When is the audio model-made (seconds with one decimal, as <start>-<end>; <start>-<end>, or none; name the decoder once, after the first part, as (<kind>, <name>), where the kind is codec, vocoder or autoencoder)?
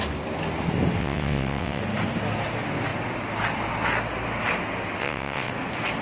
1.0-1.8 (vocoder, WaveNeXt); 5.0-5.5